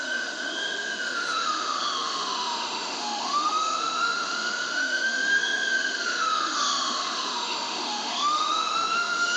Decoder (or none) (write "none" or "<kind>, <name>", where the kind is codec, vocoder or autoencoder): autoencoder, DAC-VAE